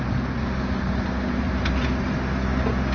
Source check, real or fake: real